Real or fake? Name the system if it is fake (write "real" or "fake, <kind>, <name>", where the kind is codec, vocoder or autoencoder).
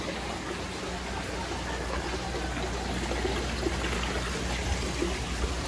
real